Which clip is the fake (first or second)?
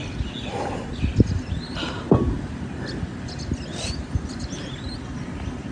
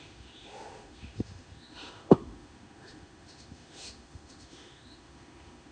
second